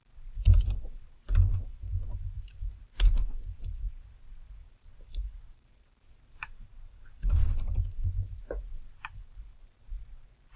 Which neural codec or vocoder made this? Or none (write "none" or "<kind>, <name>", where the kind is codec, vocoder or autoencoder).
vocoder, BigVGAN v2